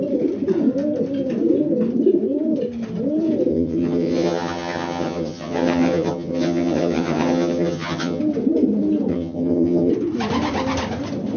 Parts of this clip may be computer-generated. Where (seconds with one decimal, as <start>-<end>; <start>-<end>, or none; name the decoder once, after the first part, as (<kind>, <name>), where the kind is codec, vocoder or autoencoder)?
3.5-8.2 (vocoder, HiFi-GAN); 9.1-9.9